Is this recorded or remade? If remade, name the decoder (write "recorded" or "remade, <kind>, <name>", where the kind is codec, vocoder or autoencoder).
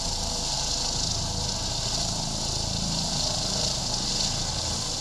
recorded